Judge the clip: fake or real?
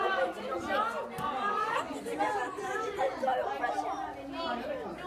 real